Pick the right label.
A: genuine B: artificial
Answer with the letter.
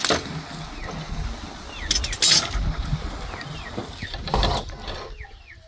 A